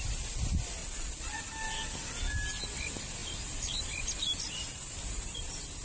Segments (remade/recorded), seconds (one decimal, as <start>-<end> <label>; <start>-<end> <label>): 0.0-0.8 recorded; 0.8-1.4 remade; 1.4-5.8 recorded